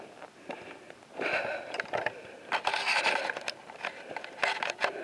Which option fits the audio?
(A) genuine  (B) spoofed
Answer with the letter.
A